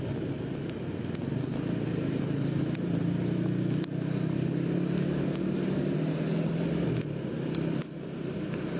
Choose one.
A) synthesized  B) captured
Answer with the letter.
B